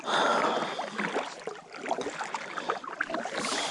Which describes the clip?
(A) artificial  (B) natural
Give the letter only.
B